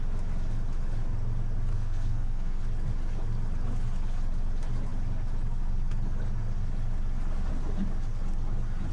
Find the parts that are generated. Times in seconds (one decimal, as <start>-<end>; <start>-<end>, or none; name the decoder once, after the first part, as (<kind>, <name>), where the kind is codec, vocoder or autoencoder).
1.7-2.6 (codec, SNAC)